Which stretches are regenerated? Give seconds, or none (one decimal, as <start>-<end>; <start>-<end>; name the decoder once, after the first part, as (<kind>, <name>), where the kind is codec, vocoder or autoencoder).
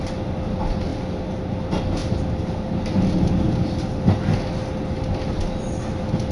none